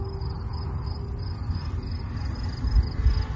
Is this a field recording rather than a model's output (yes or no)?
yes